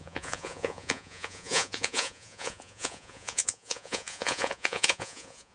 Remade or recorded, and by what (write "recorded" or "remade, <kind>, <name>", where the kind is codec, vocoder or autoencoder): remade, vocoder, Vocos